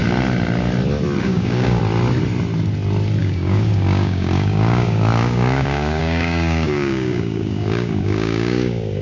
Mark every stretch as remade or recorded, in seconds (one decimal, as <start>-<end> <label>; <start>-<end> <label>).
0.0-1.2 recorded; 1.2-1.8 remade; 1.8-3.2 recorded; 3.2-9.0 remade

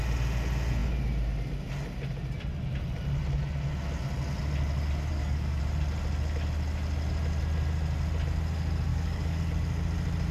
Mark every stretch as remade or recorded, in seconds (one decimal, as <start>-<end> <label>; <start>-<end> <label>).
0.0-5.1 recorded; 5.1-5.6 remade; 5.6-8.9 recorded; 8.9-9.4 remade; 9.4-10.3 recorded

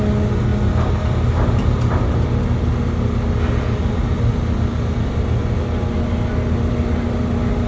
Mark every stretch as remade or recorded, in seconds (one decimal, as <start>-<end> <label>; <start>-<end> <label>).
0.0-7.7 recorded

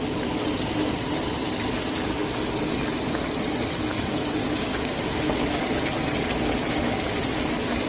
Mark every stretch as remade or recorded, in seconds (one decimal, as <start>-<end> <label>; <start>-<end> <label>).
0.0-4.4 recorded; 4.4-5.0 remade; 5.0-7.9 recorded